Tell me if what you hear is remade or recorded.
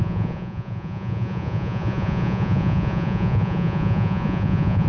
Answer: remade